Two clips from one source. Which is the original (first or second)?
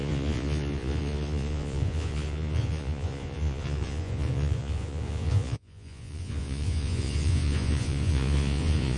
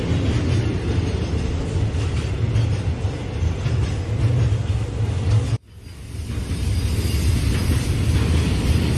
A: second